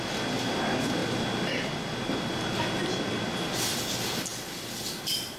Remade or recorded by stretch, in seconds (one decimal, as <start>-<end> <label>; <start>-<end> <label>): 0.0-5.4 recorded